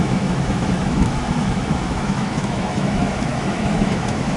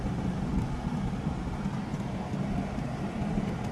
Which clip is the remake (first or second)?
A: first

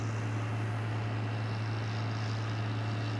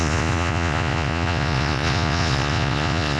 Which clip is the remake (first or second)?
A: second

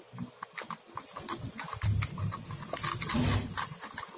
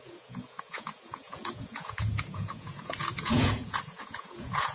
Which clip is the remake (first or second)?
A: second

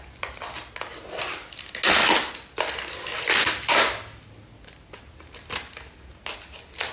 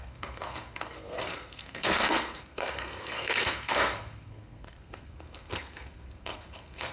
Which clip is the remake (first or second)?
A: second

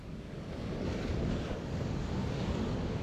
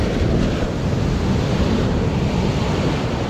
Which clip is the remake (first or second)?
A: first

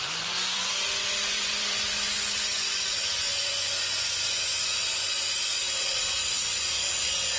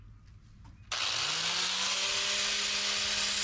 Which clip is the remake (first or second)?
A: first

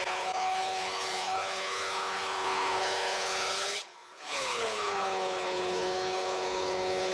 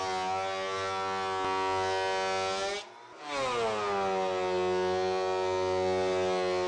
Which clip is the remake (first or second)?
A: first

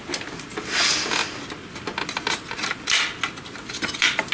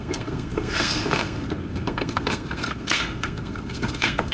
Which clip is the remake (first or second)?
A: second